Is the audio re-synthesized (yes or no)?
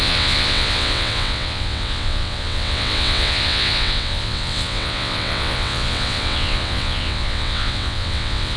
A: yes